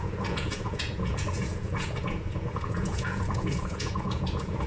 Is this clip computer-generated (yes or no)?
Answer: yes